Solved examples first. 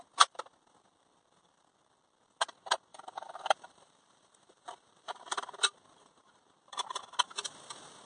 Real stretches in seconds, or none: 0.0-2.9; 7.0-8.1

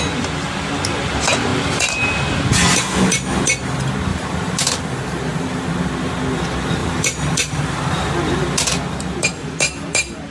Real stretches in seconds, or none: 0.0-4.1; 5.7-6.8; 7.6-10.3

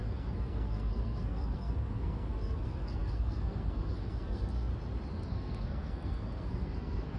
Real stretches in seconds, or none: 4.7-5.3

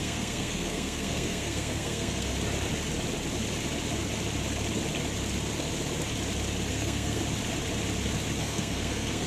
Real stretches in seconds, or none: 2.3-6.7; 7.2-8.4